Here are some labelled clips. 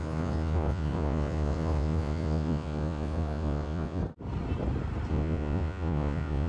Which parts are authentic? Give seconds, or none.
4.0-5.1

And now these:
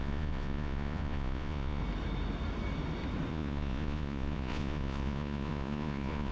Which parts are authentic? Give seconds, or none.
1.8-3.3

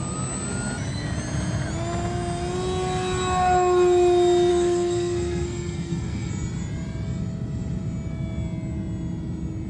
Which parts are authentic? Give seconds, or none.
0.0-4.5; 6.3-9.7

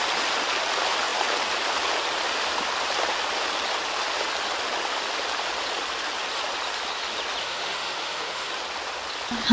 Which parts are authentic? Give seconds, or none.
0.0-7.4; 8.5-9.5

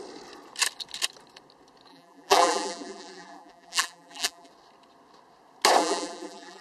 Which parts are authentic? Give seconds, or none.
0.0-1.9; 4.5-5.8